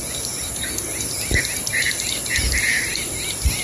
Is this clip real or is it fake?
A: real